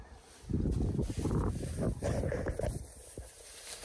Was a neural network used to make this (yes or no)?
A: no